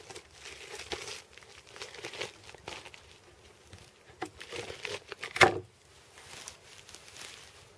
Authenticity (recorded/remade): recorded